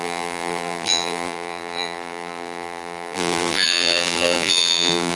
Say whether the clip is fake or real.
fake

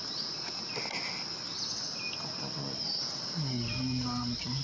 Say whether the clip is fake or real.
real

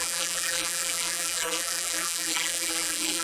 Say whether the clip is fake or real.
fake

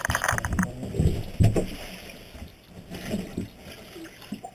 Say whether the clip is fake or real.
real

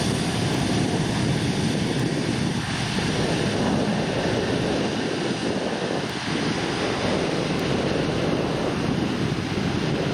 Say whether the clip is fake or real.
real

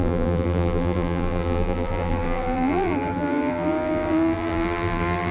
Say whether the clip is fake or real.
fake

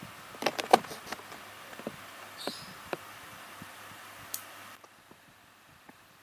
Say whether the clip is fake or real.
fake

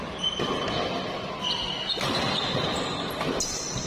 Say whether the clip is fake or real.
real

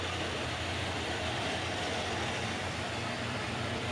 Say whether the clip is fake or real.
fake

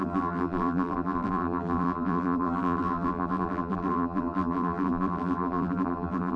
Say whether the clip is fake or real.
fake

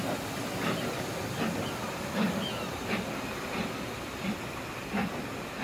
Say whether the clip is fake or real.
real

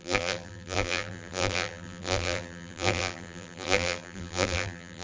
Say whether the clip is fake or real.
fake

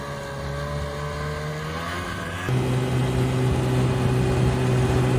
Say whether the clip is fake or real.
real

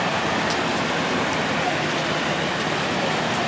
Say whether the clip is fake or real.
fake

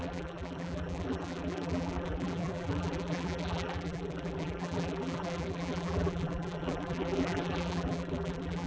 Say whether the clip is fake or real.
fake